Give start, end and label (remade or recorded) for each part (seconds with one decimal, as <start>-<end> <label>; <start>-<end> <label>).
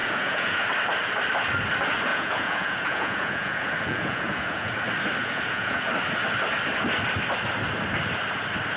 0.0-0.6 remade; 0.6-2.1 recorded; 2.1-4.7 remade; 4.7-5.2 recorded; 5.2-5.9 remade; 5.9-8.8 recorded